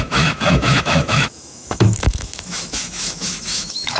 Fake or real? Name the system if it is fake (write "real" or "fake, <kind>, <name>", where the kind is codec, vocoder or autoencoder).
fake, autoencoder, DAC-VAE